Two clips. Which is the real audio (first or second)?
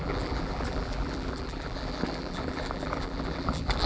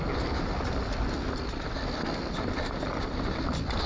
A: second